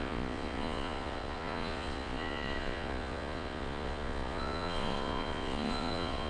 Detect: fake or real fake